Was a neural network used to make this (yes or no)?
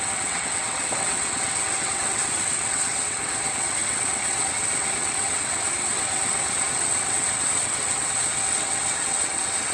yes